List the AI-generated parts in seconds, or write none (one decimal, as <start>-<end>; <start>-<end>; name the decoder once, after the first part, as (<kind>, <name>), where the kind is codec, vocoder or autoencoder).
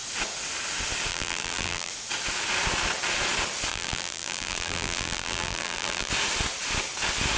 1.1-1.9 (vocoder, BigVGAN v2); 3.7-6.1